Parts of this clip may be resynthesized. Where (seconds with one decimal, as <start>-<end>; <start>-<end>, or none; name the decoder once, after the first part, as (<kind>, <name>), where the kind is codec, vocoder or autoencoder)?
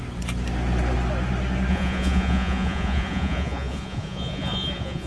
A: 1.7-5.1 (vocoder, Vocos)